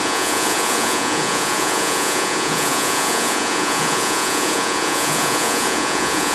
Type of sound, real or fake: fake